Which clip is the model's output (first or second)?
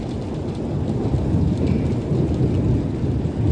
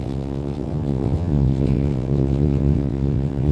second